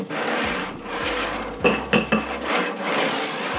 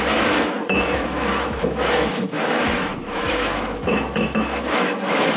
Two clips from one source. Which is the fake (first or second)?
second